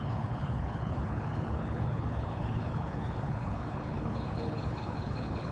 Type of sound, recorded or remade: remade